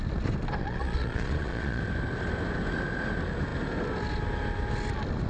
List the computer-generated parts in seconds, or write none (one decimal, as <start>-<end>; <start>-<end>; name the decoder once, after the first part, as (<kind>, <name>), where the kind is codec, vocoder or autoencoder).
0.6-1.8 (vocoder, Vocos)